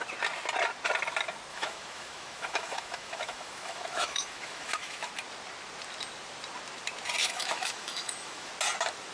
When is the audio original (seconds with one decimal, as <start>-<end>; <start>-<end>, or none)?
0.0-1.5; 5.1-7.2; 8.5-9.1